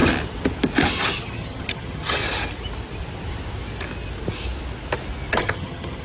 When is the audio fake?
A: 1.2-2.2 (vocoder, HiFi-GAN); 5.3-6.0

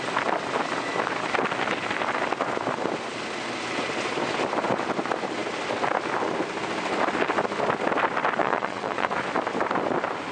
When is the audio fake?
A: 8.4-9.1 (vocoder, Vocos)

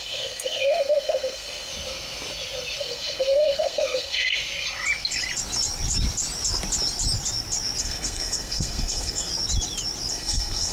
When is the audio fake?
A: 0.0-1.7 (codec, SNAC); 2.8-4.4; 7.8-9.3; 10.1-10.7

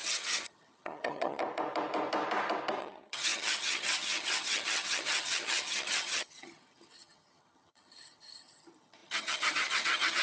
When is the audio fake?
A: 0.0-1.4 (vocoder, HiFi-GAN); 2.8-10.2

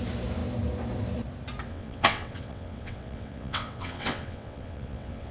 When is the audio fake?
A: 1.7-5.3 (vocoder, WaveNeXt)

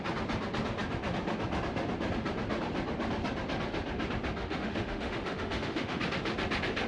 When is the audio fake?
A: 4.4-6.0 (autoencoder, DAC-VAE)